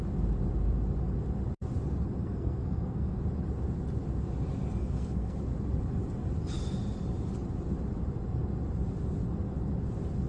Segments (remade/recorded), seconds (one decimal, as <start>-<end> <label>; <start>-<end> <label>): 0.0-2.2 recorded; 2.2-3.2 remade; 3.2-4.8 recorded; 4.8-5.4 remade; 5.4-10.3 recorded